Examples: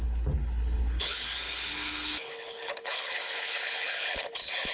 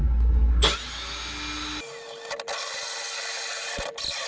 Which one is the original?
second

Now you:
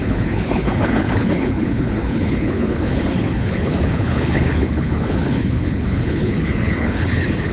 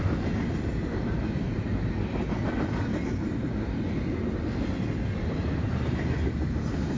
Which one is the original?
second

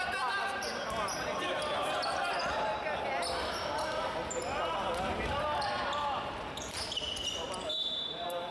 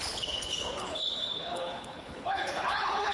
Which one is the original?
first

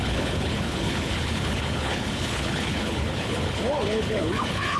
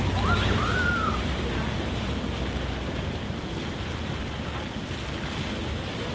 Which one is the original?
second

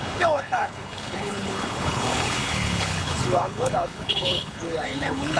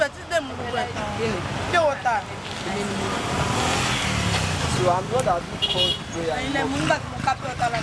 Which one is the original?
second